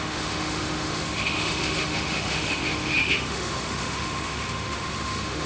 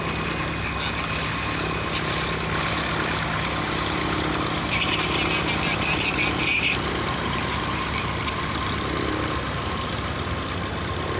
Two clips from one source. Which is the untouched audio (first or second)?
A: second